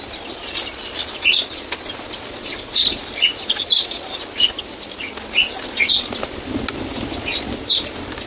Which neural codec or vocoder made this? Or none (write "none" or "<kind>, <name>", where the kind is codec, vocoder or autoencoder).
none